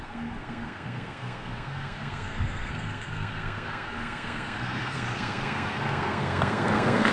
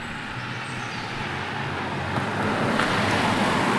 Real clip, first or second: second